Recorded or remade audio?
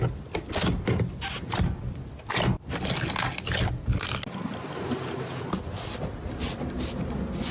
recorded